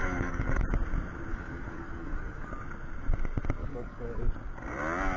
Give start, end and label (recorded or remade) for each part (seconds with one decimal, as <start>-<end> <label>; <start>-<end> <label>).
0.0-0.6 remade; 0.6-1.3 recorded; 1.3-2.5 remade; 2.5-3.6 recorded; 3.6-4.2 remade; 4.2-5.2 recorded